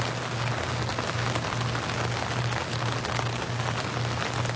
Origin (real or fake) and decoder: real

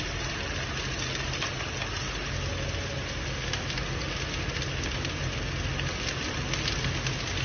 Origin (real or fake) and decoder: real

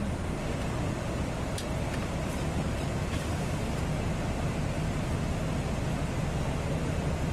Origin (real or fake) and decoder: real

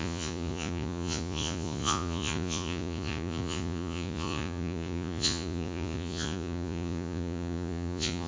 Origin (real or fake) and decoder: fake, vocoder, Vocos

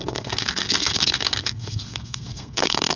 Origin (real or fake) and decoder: fake, codec, SNAC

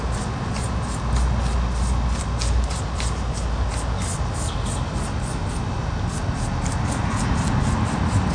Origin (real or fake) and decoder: real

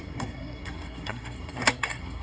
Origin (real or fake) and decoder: fake, codec, SNAC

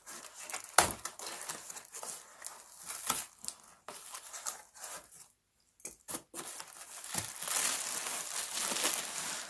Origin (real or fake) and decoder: real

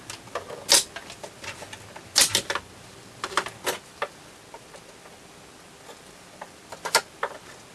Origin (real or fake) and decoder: real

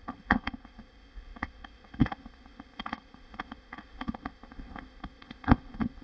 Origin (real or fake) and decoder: fake, codec, ZipCodec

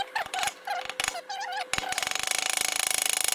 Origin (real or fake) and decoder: real